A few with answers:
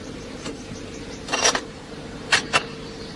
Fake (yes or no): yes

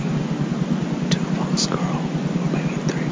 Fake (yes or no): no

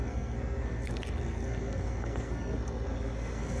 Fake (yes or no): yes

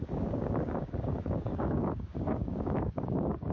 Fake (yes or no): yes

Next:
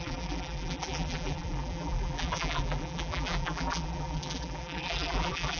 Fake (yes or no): yes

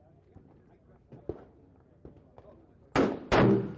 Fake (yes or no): no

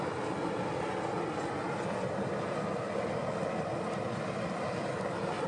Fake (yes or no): no